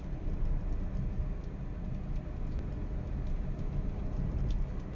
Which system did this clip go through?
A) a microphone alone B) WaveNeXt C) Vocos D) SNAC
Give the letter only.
A